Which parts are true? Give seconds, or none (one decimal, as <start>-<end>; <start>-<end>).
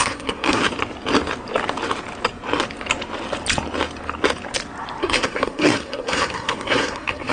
0.6-5.0